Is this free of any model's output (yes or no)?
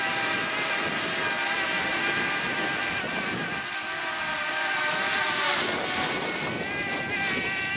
yes